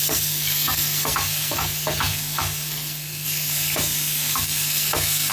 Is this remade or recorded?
remade